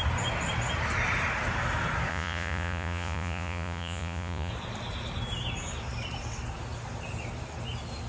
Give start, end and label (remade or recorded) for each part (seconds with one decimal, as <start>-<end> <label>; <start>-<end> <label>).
0.0-2.1 recorded; 2.1-4.5 remade; 4.5-8.1 recorded